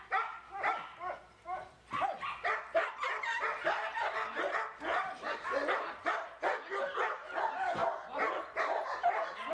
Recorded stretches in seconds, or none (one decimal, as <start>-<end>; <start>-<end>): 7.8-8.8